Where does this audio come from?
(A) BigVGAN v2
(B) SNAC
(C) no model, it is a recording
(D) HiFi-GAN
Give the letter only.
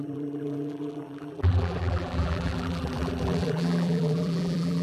A